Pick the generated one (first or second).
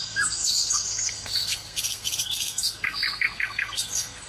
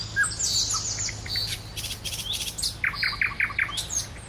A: first